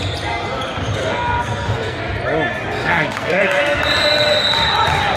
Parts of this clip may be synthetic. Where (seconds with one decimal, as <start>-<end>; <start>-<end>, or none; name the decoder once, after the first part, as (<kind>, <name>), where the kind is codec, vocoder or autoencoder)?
1.0-2.0 (codec, SNAC); 2.8-3.8